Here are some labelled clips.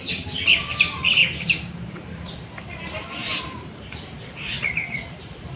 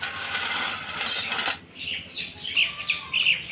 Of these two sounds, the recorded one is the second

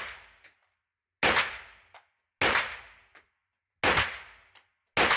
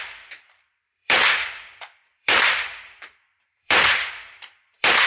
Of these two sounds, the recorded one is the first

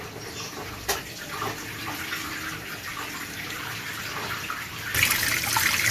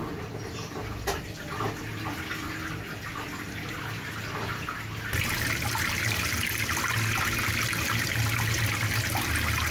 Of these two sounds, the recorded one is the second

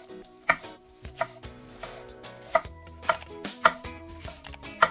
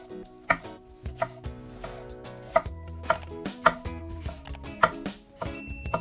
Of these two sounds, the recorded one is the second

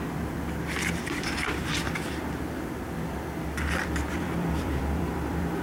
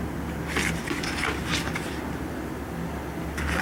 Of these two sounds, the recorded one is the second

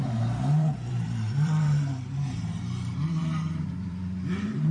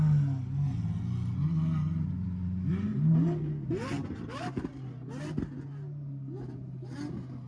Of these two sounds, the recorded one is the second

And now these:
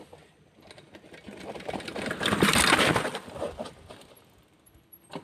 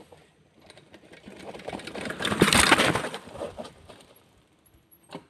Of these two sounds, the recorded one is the first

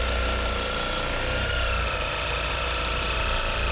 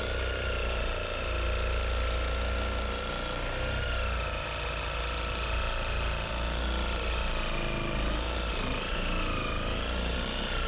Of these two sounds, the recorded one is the second